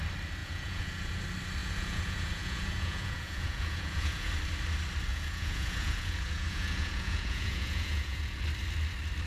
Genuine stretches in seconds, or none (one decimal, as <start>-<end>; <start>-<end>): 0.0-0.4; 1.2-1.6; 4.3-5.1; 8.4-9.3